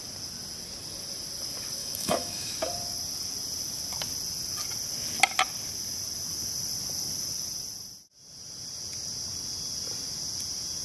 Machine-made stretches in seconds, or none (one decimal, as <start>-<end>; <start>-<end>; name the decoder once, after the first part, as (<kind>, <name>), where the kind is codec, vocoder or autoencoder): 1.8-2.5 (autoencoder, DAC-VAE)